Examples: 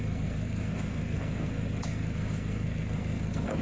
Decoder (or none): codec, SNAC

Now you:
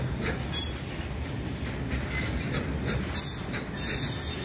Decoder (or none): none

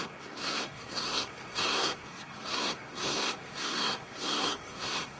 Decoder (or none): codec, SNAC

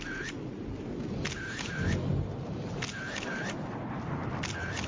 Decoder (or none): none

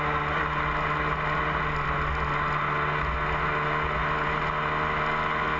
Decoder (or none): none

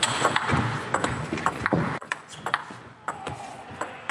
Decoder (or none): vocoder, Vocos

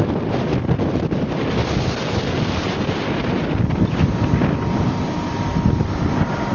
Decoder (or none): none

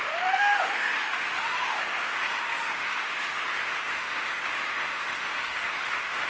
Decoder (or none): autoencoder, DAC-VAE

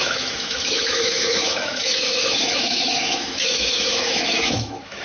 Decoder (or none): autoencoder, DAC-VAE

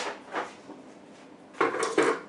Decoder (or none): none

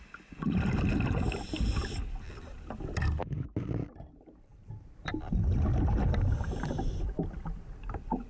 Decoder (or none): none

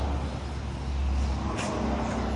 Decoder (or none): none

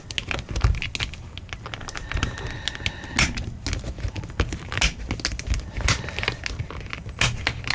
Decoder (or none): none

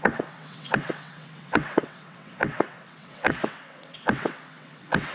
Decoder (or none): vocoder, WaveNeXt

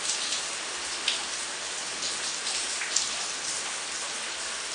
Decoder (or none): none